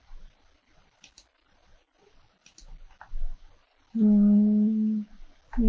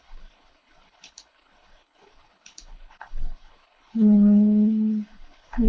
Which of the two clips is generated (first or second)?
second